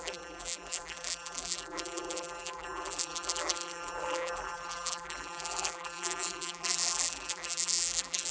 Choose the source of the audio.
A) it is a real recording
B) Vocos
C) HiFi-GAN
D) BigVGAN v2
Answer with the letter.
D